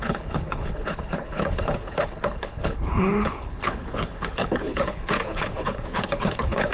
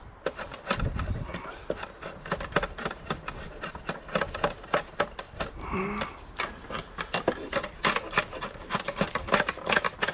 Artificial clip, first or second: first